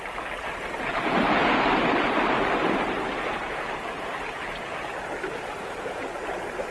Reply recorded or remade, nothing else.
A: recorded